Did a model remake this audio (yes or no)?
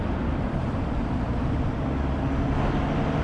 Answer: no